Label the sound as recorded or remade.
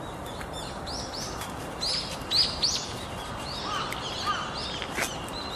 recorded